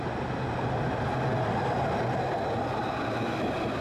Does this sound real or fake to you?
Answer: real